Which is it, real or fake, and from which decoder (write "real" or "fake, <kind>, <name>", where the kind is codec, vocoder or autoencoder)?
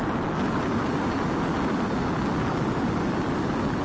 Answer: real